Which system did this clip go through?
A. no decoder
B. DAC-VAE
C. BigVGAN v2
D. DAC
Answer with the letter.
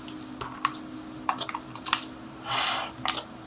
A